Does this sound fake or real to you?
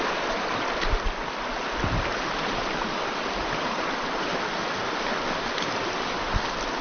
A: real